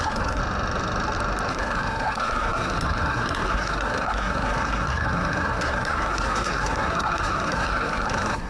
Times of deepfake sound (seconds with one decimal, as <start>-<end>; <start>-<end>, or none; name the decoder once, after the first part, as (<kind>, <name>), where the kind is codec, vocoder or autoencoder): 0.0-0.4 (codec, SNAC); 1.5-8.5